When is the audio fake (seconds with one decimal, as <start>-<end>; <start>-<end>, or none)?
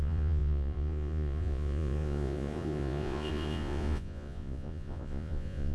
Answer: 0.0-5.7